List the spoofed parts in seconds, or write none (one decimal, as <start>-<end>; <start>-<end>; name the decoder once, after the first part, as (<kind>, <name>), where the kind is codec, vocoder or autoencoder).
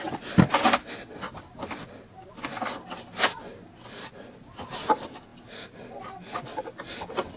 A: none